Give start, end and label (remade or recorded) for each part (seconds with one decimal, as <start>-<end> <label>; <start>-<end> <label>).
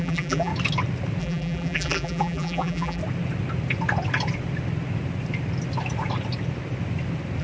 0.0-0.5 remade; 0.5-1.2 recorded; 1.2-3.0 remade; 3.0-7.4 recorded